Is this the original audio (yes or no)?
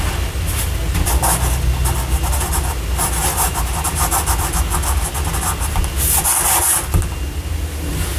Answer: yes